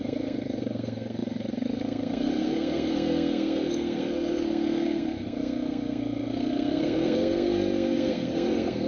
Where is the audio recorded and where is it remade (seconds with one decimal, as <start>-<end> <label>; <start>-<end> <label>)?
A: 0.0-8.9 remade